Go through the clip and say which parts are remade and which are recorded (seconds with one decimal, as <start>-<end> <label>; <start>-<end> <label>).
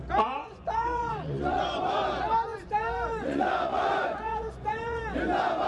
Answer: 0.0-0.4 recorded; 0.4-1.9 remade; 1.9-2.5 recorded; 2.5-5.0 remade; 5.0-5.7 recorded